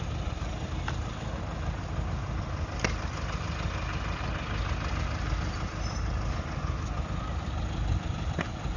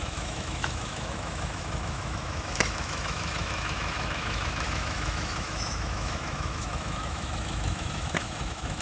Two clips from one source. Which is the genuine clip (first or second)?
first